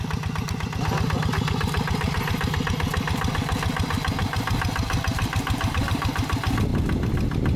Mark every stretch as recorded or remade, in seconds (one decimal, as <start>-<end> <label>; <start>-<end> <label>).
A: 0.0-7.6 recorded